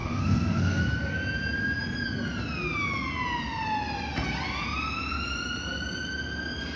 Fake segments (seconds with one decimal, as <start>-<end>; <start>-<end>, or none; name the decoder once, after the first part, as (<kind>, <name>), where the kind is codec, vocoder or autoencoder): 0.0-0.8 (codec, SNAC)